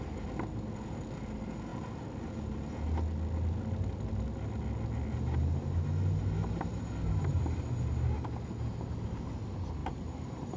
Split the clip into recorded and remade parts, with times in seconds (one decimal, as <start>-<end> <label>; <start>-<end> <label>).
0.0-9.8 recorded; 9.8-10.6 remade